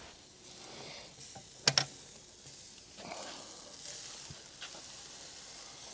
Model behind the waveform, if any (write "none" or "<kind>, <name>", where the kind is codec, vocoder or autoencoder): none